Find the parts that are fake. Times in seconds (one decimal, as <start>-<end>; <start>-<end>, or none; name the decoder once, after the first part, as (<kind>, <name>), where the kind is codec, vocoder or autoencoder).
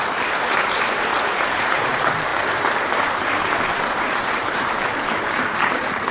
0.0-6.1 (vocoder, BigVGAN v2)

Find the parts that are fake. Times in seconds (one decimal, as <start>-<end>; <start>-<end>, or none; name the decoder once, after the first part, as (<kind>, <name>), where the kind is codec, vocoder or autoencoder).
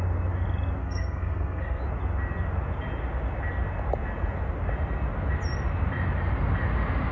0.8-1.8 (codec, SNAC)